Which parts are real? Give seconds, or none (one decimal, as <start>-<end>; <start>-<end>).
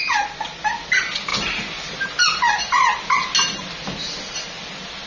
0.0-5.1